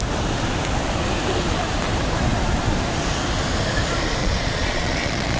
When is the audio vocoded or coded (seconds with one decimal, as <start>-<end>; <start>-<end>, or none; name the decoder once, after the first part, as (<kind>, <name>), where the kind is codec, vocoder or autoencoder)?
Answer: 4.2-5.4 (vocoder, Vocos)